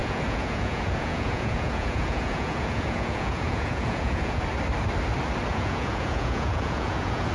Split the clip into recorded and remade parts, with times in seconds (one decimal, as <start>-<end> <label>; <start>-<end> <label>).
0.0-4.4 remade; 4.4-5.5 recorded; 5.5-7.3 remade